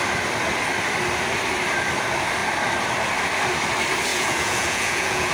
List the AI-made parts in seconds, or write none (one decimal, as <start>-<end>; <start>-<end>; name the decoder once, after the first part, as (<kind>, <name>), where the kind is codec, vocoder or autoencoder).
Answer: 4.1-5.3 (vocoder, Vocos)